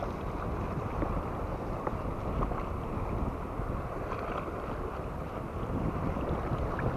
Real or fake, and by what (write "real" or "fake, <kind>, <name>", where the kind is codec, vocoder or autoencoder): real